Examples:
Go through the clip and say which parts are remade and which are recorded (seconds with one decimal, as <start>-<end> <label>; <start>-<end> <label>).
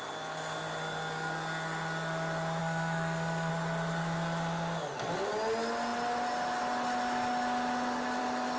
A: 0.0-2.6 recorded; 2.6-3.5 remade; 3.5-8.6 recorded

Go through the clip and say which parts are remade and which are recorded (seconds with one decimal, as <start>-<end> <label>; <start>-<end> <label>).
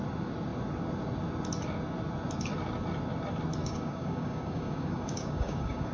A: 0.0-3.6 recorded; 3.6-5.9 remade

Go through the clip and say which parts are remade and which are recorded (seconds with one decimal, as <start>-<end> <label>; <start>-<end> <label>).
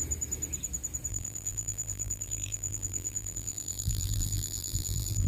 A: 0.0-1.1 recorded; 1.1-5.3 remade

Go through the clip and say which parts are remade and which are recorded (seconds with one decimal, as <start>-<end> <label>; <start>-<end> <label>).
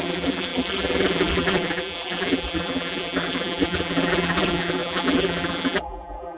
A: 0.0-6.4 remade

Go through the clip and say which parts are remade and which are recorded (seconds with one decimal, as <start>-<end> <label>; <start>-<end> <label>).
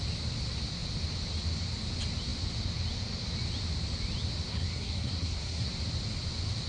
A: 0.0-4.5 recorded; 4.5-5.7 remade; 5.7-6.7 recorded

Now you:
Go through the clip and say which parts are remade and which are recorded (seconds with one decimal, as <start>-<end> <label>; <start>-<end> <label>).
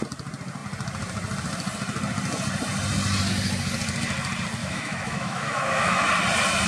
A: 0.0-4.6 recorded; 4.6-6.1 remade; 6.1-6.7 recorded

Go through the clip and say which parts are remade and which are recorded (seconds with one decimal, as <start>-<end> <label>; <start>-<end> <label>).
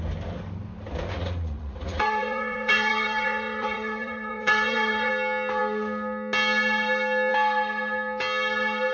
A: 0.0-1.2 recorded; 1.2-5.1 remade; 5.1-8.9 recorded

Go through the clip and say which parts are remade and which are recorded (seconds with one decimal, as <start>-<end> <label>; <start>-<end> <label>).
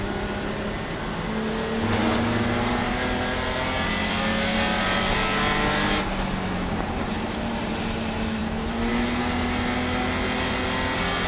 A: 0.0-11.3 recorded